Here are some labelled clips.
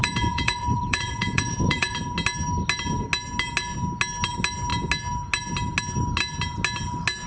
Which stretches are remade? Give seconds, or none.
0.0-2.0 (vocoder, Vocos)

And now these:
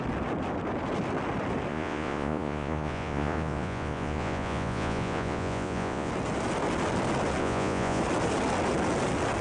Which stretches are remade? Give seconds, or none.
1.7-6.1 (vocoder, Vocos); 7.4-8.0

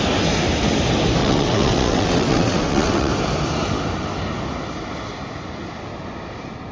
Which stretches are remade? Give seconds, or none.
1.2-3.1 (vocoder, WaveNeXt)

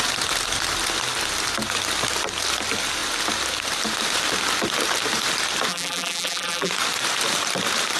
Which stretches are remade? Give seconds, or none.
5.7-6.7 (vocoder, BigVGAN v2)

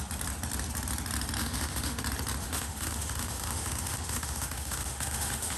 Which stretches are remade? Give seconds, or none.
1.4-2.0 (autoencoder, DAC-VAE); 2.4-5.6

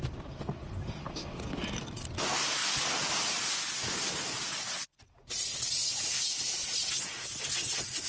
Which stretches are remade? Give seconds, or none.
none

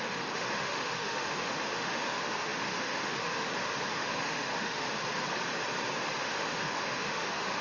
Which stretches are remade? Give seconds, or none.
0.0-5.0 (autoencoder, DAC-VAE); 6.2-7.6

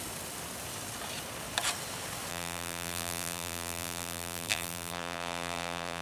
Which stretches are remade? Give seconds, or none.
2.3-6.0 (vocoder, BigVGAN v2)